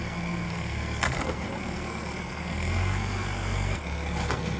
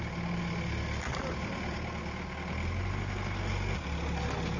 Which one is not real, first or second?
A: first